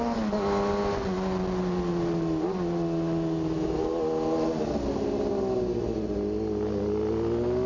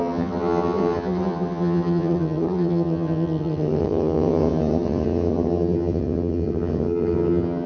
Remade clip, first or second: second